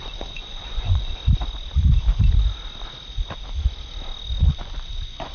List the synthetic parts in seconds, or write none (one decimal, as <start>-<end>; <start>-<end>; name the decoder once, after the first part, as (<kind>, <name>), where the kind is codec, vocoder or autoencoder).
0.0-1.2 (vocoder, Vocos); 4.4-5.3